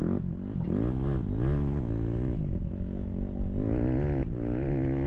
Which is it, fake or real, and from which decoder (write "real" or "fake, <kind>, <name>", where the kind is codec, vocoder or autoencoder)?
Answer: real